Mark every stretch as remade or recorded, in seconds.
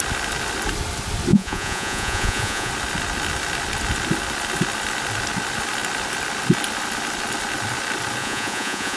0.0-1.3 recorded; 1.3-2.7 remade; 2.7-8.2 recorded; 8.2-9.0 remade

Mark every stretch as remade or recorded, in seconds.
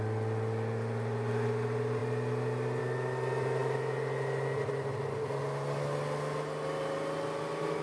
0.0-7.8 recorded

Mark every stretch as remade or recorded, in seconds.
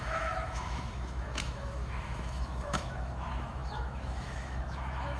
0.0-5.2 remade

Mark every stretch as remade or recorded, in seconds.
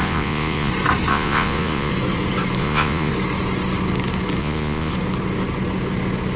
0.0-0.7 remade; 0.7-1.1 recorded; 1.1-1.9 remade; 1.9-2.6 recorded; 2.6-3.1 remade; 3.1-4.4 recorded; 4.4-4.9 remade; 4.9-6.4 recorded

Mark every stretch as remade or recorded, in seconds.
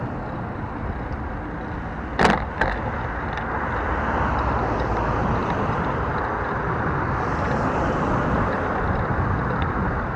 0.0-5.4 recorded; 5.4-6.0 remade; 6.0-10.2 recorded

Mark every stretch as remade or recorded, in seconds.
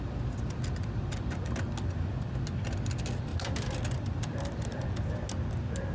0.0-3.3 recorded; 3.3-4.9 remade; 4.9-5.9 recorded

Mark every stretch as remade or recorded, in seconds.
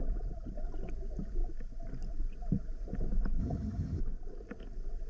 0.0-3.4 recorded; 3.4-4.0 remade; 4.0-5.1 recorded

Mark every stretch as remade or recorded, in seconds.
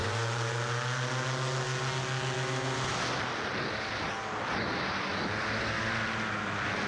0.0-6.9 recorded